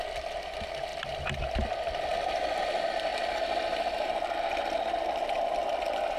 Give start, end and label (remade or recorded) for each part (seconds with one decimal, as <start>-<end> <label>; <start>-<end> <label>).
0.0-6.2 recorded